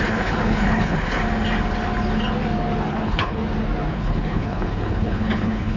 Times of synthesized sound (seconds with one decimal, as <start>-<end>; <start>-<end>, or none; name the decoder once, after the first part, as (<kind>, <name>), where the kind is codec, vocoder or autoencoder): 0.0-1.2 (codec, HILCodec); 2.9-3.4; 3.9-5.8